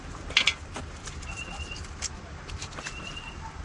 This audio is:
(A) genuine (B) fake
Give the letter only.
A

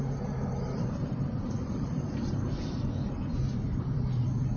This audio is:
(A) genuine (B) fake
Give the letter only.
B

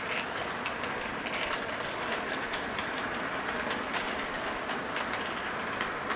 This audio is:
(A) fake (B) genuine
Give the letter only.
A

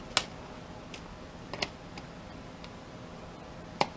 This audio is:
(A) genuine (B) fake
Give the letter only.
A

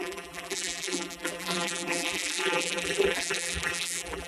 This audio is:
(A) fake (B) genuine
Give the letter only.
A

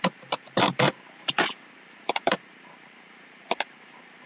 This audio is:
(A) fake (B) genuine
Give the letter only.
A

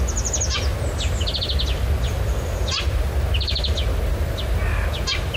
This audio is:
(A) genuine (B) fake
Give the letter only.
A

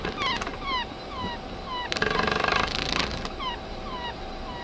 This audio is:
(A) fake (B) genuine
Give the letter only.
B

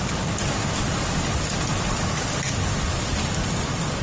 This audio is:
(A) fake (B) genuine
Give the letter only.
B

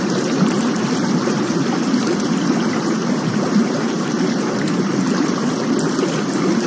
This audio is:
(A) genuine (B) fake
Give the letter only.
A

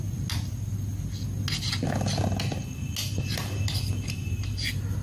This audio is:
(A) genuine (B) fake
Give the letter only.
A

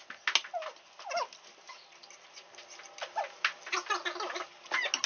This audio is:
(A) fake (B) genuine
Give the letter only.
B